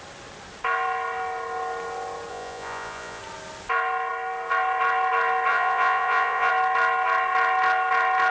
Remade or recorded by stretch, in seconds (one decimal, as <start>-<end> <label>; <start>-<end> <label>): 0.0-2.3 recorded; 2.3-3.2 remade; 3.2-5.5 recorded; 5.5-6.5 remade; 6.5-8.3 recorded